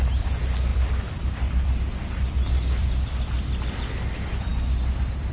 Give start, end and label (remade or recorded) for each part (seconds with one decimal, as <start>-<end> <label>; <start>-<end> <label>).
0.0-0.7 recorded; 0.7-3.9 remade; 3.9-5.3 recorded